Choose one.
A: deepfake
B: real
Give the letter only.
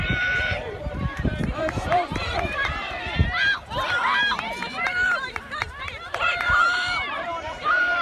A